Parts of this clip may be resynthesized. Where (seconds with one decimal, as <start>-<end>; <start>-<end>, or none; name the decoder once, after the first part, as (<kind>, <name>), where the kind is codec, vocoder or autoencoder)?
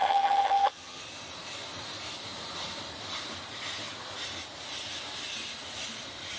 0.0-1.0 (vocoder, HiFi-GAN)